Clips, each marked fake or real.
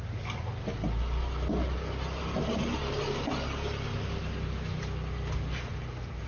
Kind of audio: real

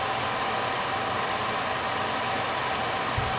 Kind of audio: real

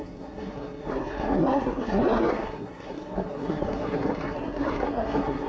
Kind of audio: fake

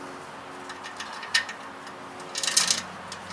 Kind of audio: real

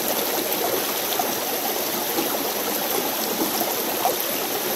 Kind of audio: real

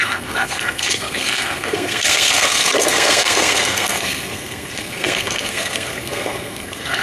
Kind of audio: fake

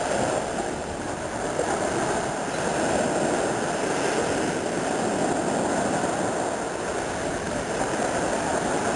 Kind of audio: real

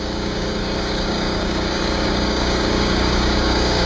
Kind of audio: fake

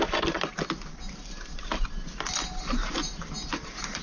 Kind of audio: real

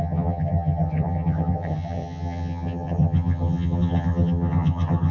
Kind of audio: fake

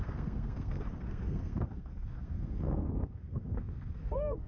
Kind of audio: fake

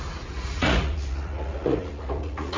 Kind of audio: fake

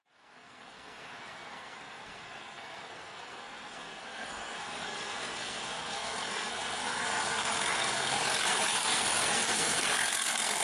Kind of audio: fake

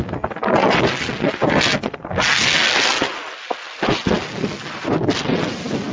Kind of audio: real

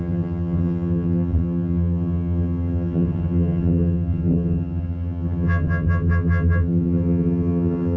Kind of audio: fake